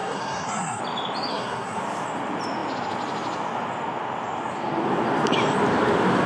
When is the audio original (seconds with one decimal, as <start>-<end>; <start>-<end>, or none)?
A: 0.8-1.3; 1.8-6.3